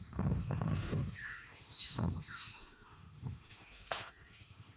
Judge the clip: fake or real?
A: fake